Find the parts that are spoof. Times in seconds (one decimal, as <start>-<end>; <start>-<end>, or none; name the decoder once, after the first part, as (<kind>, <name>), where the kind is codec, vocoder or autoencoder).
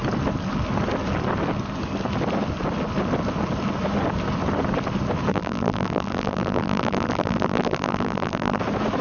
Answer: 5.3-8.6 (vocoder, BigVGAN v2)